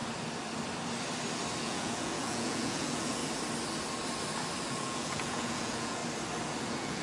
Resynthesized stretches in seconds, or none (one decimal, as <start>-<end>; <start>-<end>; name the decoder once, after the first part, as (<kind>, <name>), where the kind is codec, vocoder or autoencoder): 1.6-3.2 (vocoder, Vocos); 4.7-6.0; 6.6-7.0